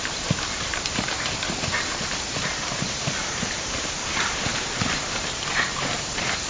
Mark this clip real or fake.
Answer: fake